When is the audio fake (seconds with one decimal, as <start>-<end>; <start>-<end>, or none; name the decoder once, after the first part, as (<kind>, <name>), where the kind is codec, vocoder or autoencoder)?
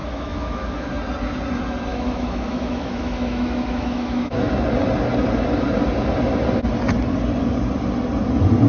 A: 0.0-0.9 (autoencoder, DAC-VAE); 1.9-4.5